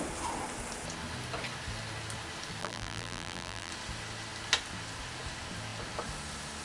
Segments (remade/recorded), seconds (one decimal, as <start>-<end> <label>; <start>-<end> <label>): 0.0-2.6 recorded; 2.6-3.7 remade; 3.7-6.6 recorded